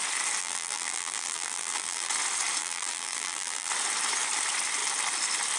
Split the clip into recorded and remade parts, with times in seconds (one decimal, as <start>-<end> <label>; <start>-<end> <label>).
0.0-0.4 recorded; 0.4-2.1 remade; 2.1-2.6 recorded; 2.6-3.7 remade; 3.7-5.6 recorded